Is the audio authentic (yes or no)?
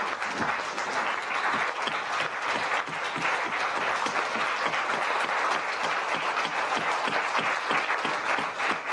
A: yes